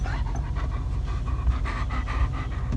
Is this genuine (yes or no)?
yes